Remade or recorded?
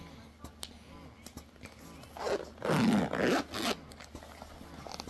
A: recorded